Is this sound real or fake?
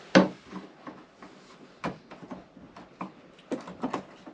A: real